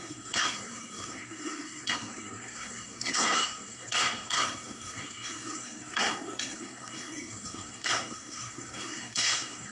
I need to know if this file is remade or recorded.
remade